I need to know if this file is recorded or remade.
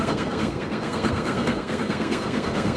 remade